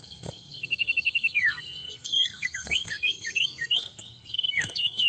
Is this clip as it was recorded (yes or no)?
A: no